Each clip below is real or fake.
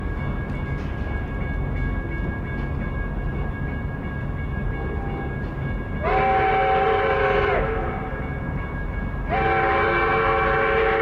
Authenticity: real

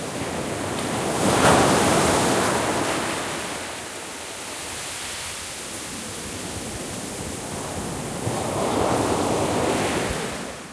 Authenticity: real